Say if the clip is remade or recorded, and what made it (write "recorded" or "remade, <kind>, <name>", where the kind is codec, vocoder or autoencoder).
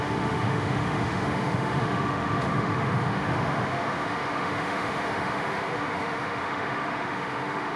remade, autoencoder, DAC-VAE